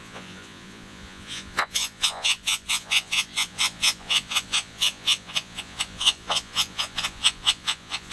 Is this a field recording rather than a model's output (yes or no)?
no